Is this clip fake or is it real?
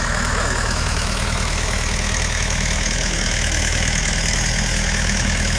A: fake